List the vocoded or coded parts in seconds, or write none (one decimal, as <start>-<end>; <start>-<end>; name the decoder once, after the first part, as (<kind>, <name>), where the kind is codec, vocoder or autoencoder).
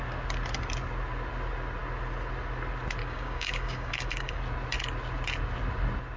3.0-4.4 (codec, DAC)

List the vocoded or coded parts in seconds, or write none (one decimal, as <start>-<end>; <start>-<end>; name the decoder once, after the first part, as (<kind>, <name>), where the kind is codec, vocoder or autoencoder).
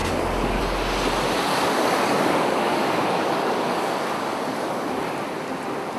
0.0-0.6 (codec, DAC); 1.5-4.9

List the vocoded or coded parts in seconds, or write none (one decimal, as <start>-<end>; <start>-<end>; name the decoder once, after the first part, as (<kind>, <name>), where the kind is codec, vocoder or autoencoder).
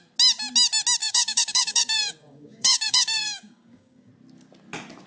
1.0-4.1 (codec, DAC)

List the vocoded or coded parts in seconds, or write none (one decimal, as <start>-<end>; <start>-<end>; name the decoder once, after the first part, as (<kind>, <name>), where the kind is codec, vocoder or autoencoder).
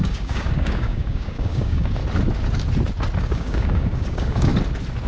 0.0-2.0 (codec, DAC); 3.2-4.5